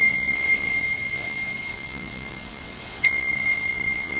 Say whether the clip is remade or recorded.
remade